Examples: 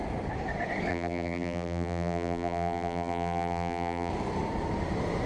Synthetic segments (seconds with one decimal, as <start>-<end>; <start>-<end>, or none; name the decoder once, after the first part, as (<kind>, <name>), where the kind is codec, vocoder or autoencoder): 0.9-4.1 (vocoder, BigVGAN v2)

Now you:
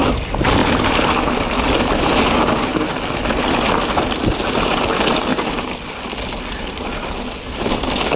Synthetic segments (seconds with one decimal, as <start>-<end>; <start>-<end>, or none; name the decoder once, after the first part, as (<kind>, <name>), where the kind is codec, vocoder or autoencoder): 0.6-1.1 (vocoder, BigVGAN v2)

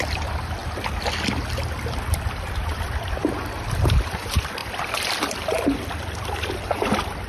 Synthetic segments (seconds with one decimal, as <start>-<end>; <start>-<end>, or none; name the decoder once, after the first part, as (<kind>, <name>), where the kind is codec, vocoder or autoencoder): 0.0-0.6 (vocoder, BigVGAN v2); 2.3-3.2; 3.8-7.3

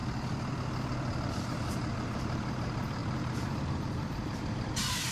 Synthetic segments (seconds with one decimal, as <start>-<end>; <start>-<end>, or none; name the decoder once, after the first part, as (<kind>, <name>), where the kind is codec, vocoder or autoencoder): 1.3-5.1 (vocoder, BigVGAN v2)

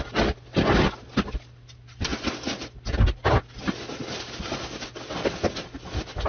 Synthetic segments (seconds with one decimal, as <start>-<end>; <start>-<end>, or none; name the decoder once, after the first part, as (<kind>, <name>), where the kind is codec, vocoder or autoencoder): none

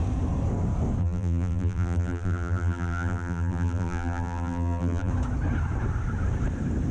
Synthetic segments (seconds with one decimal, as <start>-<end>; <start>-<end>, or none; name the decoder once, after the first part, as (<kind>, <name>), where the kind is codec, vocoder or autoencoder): 1.0-5.1 (vocoder, BigVGAN v2)

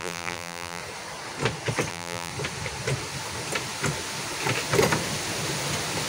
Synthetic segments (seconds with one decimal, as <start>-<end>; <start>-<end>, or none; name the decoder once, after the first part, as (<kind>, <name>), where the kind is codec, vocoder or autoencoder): 0.0-0.8 (vocoder, BigVGAN v2); 1.9-2.3

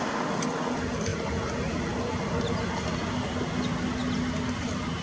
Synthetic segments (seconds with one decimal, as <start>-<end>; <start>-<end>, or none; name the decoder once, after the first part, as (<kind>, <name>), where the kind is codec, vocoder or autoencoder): none